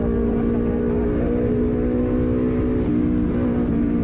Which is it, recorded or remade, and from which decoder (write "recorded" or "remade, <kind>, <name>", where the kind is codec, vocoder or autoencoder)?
recorded